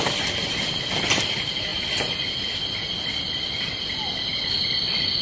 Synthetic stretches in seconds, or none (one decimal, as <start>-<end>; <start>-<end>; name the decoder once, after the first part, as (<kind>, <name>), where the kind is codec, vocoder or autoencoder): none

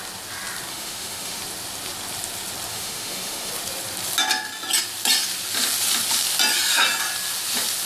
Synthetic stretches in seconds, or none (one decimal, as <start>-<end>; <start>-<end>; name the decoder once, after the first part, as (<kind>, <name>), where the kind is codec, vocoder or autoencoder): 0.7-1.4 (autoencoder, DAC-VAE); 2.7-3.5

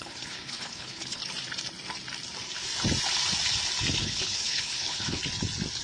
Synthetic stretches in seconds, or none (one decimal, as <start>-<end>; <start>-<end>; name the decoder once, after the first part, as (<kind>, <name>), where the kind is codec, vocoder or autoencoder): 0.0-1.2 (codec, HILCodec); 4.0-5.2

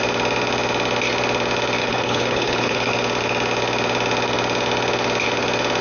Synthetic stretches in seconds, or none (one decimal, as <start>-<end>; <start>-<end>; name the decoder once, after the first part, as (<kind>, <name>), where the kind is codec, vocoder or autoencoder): 1.8-2.9 (codec, HILCodec)

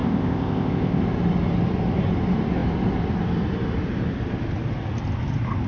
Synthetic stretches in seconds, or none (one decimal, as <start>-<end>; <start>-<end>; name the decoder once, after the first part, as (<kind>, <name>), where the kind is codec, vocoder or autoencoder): 0.0-1.0 (codec, ZipCodec)

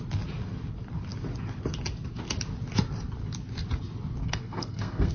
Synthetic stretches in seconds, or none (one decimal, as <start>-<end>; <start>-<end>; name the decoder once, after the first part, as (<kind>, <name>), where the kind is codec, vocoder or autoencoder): 4.2-5.1 (codec, SNAC)

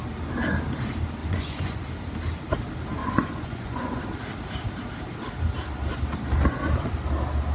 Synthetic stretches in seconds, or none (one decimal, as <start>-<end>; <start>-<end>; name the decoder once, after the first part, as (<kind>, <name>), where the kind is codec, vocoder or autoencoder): 1.2-1.8 (vocoder, Vocos); 3.0-4.0